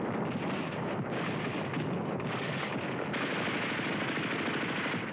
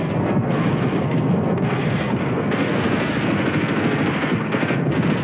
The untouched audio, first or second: first